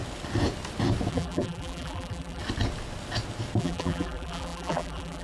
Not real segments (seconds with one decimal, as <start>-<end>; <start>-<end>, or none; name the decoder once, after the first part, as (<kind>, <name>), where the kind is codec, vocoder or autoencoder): 1.1-2.4 (vocoder, BigVGAN v2); 3.6-5.2